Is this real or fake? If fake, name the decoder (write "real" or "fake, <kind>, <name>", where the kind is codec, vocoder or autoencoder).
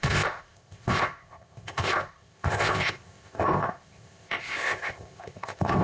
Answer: fake, codec, ZipCodec